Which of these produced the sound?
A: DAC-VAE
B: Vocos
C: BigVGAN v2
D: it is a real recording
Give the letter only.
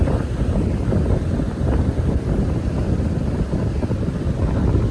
D